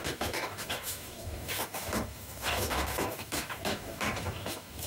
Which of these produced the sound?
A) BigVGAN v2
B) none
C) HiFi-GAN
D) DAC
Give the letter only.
D